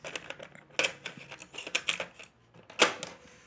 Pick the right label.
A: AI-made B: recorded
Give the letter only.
B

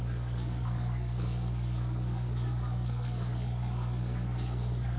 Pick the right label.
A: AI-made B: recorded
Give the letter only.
A